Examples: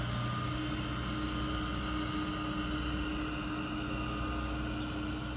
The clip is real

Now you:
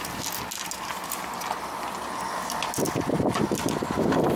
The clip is real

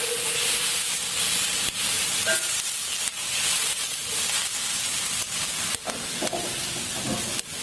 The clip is real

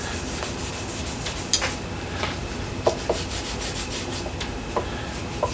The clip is real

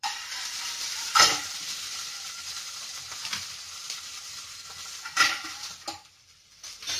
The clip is fake